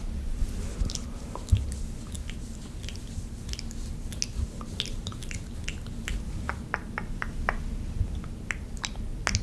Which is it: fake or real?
real